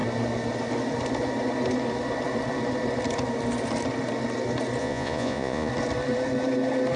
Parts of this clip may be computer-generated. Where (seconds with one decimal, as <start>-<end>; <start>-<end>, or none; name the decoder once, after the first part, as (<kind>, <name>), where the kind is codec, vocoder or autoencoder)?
4.8-5.7 (vocoder, Vocos)